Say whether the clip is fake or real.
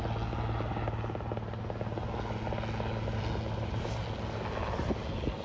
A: real